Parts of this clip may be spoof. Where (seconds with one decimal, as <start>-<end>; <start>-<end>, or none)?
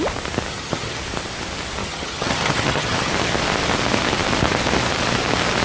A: 0.5-1.0; 1.8-3.1